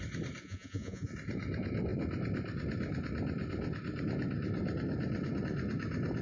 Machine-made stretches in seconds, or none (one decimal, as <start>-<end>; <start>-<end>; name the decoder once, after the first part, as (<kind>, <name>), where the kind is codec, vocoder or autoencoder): 0.4-1.1 (vocoder, Vocos)